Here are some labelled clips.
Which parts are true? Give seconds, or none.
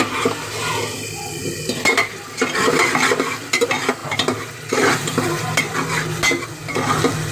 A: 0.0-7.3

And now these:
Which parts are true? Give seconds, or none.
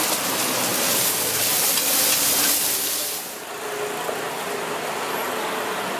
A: 0.0-6.0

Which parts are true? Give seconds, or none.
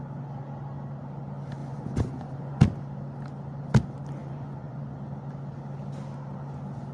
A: 0.0-1.6; 2.6-4.2; 4.8-6.9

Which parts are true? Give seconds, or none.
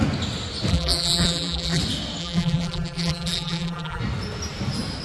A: 0.0-0.7; 1.8-2.2; 4.0-5.0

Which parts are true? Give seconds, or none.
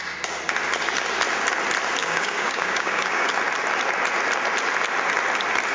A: 0.0-2.0; 3.3-5.7